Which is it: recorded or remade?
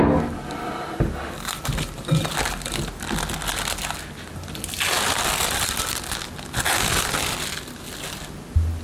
recorded